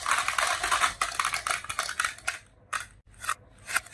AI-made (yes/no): no